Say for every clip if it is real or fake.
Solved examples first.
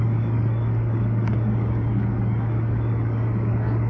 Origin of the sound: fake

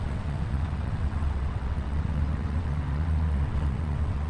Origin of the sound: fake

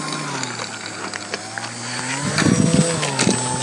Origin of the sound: real